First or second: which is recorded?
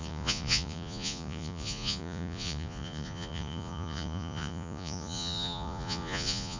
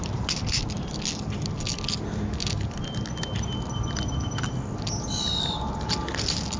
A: second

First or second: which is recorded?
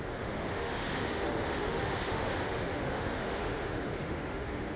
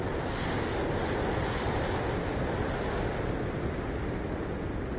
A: second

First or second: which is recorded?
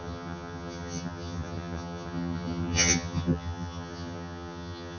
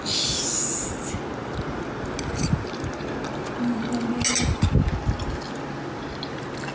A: second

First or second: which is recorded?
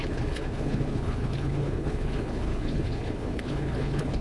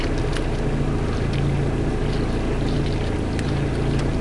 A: second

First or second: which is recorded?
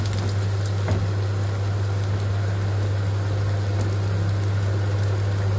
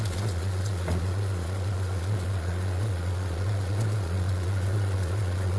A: first